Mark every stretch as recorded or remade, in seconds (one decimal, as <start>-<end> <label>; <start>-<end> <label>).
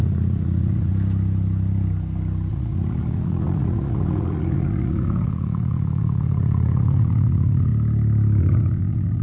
0.0-0.9 remade; 0.9-2.5 recorded; 2.5-7.7 remade; 7.7-8.4 recorded; 8.4-9.2 remade